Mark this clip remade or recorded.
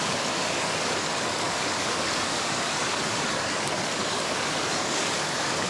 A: remade